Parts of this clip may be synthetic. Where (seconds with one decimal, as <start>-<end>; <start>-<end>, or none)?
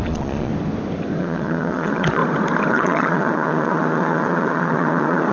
0.0-0.5; 1.2-2.2; 2.7-5.3